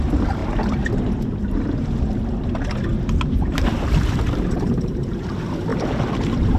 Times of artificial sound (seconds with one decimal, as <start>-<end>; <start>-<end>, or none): 2.9-5.3; 5.7-6.6